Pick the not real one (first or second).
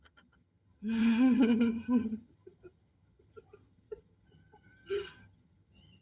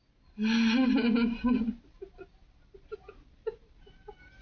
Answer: first